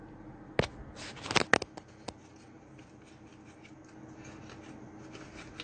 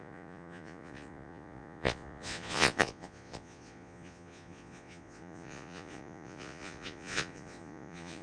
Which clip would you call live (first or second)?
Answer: first